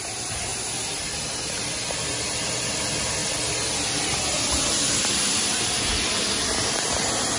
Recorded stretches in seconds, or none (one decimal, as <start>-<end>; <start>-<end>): 0.0-0.5; 2.0-7.4